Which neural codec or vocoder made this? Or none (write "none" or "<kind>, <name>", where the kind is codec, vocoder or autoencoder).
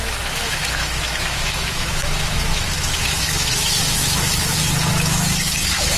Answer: autoencoder, DAC-VAE